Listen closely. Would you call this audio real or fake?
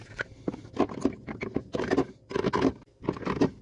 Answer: real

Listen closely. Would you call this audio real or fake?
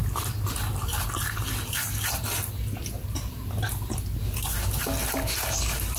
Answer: real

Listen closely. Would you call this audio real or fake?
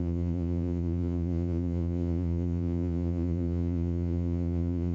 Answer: fake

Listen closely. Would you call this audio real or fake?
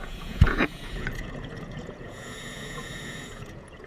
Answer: fake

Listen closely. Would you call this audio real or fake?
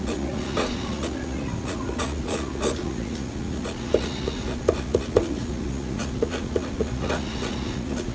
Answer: fake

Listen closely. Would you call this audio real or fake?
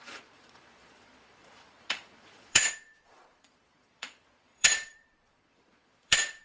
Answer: fake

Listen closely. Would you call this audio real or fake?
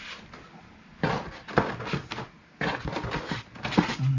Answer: real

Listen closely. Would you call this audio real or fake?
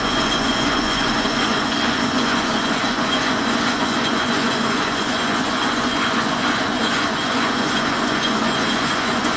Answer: fake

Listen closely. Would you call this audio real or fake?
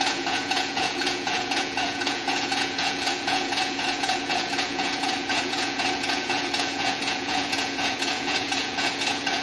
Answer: fake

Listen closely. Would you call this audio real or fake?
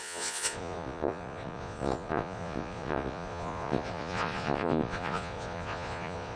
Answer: fake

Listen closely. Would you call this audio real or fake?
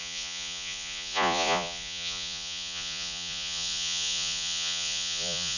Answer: fake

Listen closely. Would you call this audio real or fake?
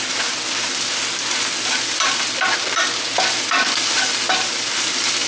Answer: real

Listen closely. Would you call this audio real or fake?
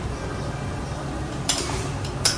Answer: real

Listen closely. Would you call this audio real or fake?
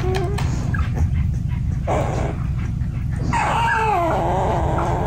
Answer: real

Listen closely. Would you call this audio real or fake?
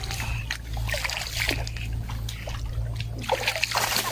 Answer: real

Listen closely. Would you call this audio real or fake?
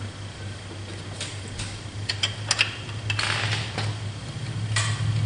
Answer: real